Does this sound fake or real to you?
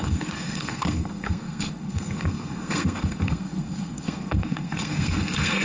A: fake